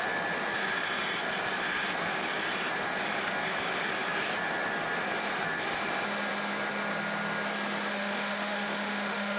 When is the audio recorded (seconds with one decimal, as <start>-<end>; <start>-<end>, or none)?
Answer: 0.0-7.9

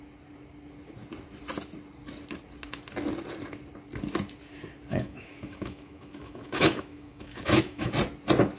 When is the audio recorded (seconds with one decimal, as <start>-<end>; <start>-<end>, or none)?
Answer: 0.0-4.9; 7.9-8.6

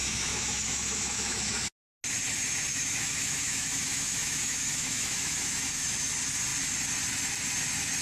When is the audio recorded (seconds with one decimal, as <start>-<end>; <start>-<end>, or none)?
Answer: 1.4-2.7; 6.1-8.0

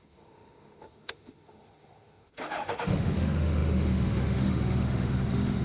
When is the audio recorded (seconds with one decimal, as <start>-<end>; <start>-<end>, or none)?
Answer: none

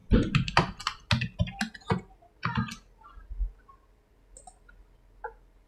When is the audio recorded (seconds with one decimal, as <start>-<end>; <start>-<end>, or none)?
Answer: 0.0-5.7

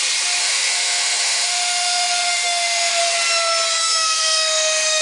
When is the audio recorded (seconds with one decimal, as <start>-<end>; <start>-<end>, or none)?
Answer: 0.0-0.4; 3.0-3.8

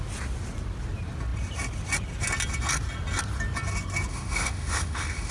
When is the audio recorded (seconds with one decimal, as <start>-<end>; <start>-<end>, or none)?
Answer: 0.0-4.1

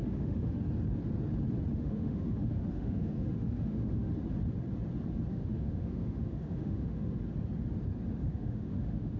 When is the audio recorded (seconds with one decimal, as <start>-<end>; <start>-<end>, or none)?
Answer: 0.6-1.7; 4.1-5.3; 7.2-8.2